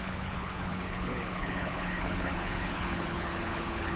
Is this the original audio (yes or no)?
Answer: no